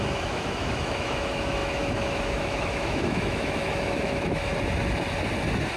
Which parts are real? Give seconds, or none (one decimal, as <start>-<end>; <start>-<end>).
4.5-5.8

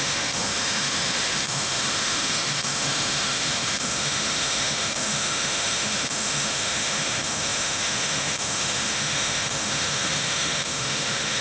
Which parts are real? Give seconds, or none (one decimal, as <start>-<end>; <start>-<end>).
none